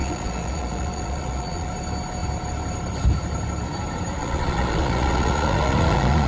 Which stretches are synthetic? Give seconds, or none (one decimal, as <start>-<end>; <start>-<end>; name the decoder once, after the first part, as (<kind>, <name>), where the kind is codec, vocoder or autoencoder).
0.0-1.7 (vocoder, Vocos); 4.2-6.3

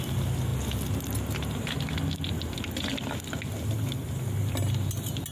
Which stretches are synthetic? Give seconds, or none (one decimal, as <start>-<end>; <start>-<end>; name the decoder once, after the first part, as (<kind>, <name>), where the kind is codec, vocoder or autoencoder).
none